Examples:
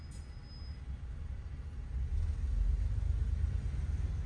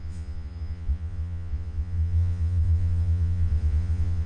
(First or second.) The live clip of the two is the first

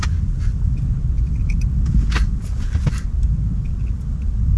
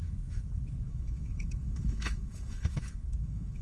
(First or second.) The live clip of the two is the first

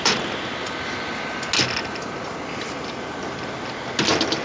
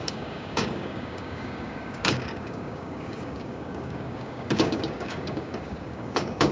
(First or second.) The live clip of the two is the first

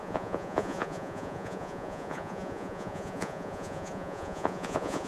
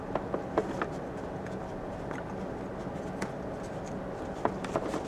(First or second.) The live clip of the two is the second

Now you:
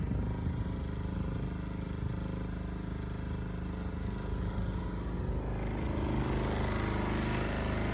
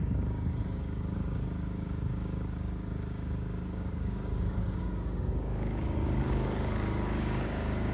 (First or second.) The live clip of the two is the first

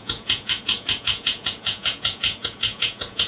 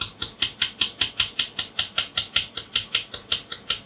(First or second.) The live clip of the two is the second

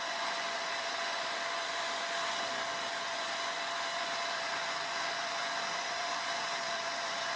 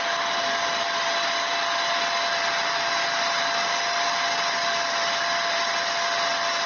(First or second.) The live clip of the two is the second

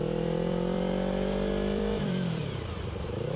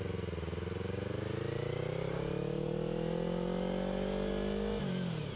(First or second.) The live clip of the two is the second